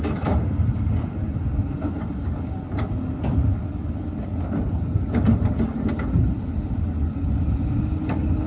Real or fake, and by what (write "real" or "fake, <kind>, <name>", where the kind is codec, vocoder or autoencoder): real